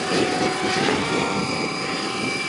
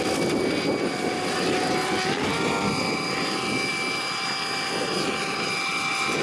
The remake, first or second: first